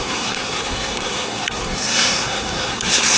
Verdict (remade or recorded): remade